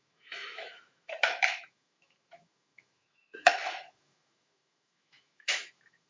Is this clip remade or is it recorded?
remade